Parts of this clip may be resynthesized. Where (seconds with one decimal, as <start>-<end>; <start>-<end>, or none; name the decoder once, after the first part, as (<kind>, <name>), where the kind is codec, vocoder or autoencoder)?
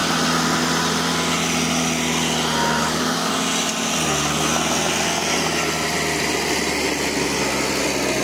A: 2.8-3.3 (codec, DAC)